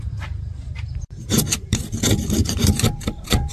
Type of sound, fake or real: fake